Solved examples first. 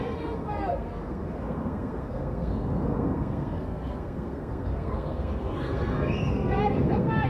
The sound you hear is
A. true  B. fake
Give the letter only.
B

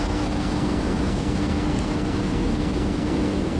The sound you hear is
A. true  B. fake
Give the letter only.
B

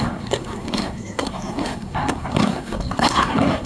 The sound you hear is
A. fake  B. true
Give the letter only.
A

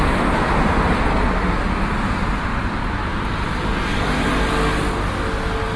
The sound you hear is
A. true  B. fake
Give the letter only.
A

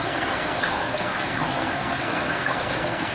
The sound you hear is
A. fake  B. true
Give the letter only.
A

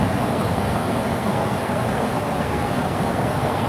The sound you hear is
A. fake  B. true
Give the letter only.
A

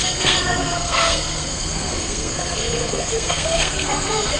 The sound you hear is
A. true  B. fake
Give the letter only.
B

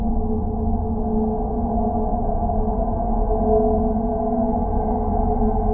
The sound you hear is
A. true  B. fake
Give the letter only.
A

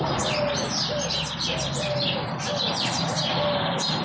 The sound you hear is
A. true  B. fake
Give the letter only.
A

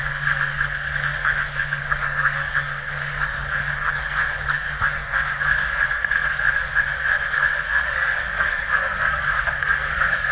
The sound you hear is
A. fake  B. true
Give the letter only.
A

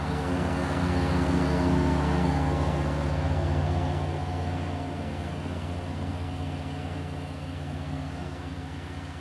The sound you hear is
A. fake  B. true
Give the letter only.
A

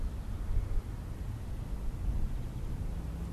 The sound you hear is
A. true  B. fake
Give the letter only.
A